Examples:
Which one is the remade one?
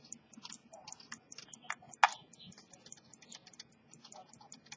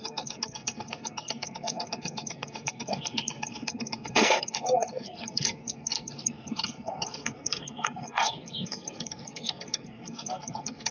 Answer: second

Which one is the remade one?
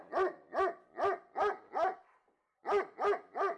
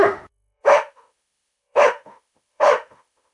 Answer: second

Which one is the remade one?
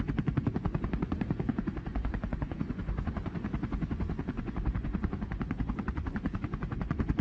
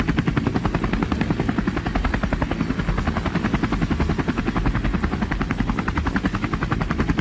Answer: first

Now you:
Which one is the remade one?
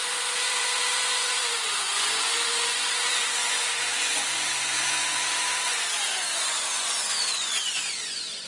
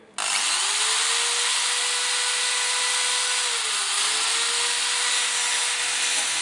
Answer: first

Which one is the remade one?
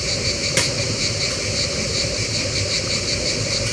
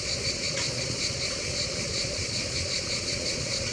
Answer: second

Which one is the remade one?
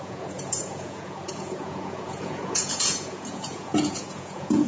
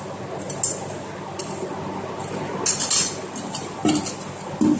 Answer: first